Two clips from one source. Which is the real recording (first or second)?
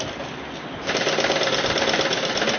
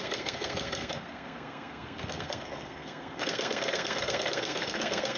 first